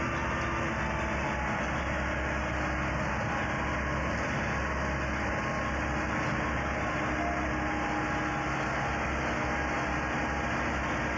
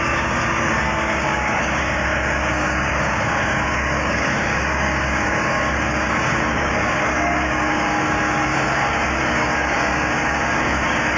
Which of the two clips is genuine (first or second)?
first